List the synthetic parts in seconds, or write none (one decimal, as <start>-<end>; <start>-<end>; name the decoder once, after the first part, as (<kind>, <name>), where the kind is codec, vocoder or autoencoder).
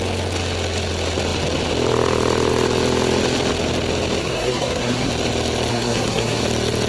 4.2-5.1 (codec, SNAC); 5.7-6.4